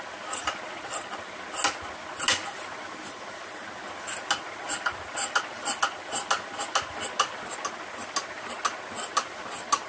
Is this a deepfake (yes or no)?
no